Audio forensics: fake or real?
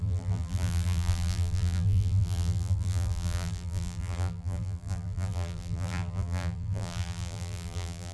fake